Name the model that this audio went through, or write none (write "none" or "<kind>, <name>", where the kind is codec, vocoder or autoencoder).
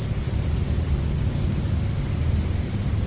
none